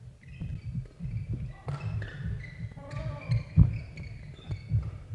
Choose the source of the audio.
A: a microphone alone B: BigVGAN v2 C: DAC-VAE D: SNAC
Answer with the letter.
A